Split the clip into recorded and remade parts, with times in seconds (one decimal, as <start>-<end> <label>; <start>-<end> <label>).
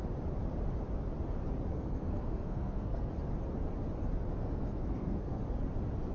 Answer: 0.0-1.7 recorded; 1.7-3.1 remade; 3.1-4.4 recorded; 4.4-5.4 remade; 5.4-6.1 recorded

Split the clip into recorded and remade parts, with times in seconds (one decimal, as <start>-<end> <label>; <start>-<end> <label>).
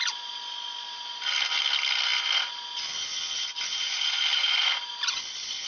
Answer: 0.0-5.7 recorded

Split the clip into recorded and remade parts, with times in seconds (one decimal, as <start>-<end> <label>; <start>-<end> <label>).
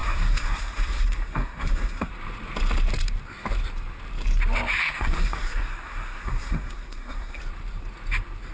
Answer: 0.0-2.1 remade; 2.1-4.8 recorded; 4.8-7.4 remade; 7.4-8.5 recorded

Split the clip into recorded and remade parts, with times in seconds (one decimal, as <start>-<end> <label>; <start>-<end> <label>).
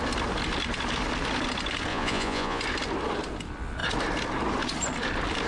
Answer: 0.0-1.9 recorded; 1.9-2.6 remade; 2.6-5.5 recorded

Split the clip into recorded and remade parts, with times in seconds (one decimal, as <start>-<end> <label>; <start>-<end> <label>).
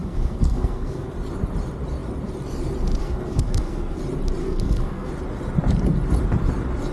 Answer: 0.0-1.1 remade; 1.1-3.0 recorded; 3.0-4.0 remade; 4.0-4.4 recorded; 4.4-5.1 remade; 5.1-6.9 recorded